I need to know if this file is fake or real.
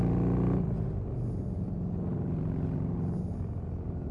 real